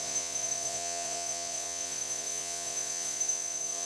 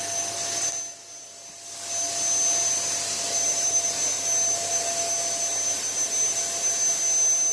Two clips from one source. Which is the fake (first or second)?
first